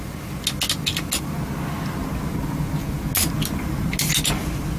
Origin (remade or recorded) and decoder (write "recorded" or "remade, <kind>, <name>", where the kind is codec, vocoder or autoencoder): recorded